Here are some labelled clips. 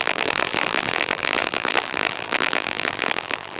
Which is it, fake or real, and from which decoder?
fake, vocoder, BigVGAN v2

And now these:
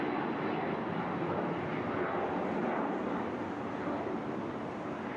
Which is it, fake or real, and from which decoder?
real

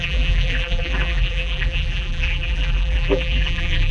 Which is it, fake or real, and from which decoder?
fake, vocoder, BigVGAN v2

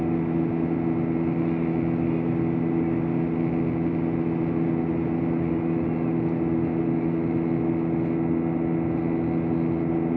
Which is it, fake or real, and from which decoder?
real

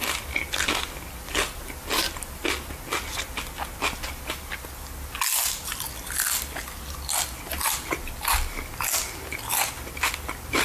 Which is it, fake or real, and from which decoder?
real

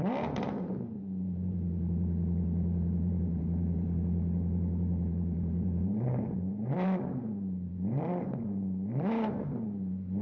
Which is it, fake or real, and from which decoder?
fake, vocoder, BigVGAN v2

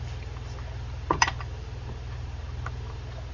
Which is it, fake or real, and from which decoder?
fake, vocoder, BigVGAN v2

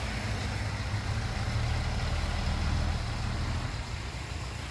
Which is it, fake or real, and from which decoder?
real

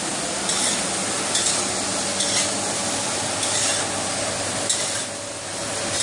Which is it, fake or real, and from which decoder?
real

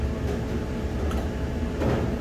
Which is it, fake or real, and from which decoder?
real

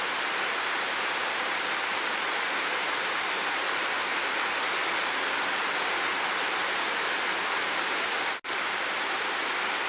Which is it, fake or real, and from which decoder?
real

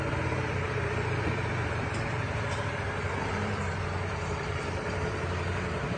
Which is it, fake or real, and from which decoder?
fake, vocoder, BigVGAN v2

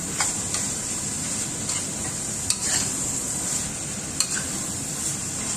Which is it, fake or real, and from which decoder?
fake, vocoder, BigVGAN v2